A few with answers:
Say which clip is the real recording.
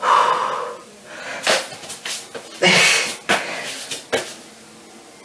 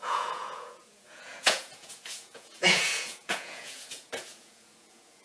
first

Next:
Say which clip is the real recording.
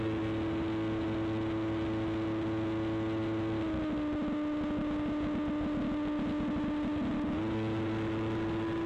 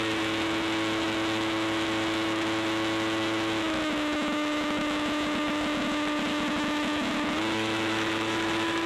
first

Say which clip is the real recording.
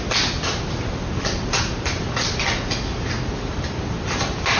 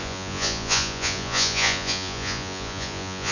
first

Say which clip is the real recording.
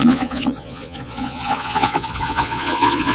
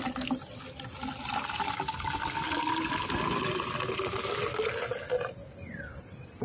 second